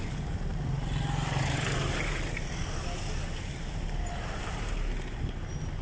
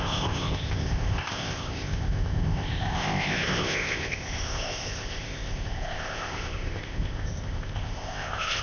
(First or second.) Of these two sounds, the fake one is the second